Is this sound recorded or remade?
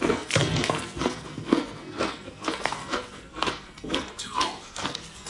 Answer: remade